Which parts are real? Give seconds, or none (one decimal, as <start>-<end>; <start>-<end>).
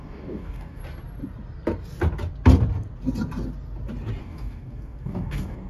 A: 0.8-4.2